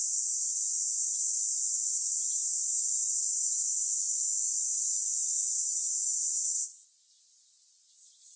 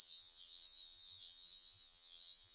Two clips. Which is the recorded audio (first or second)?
first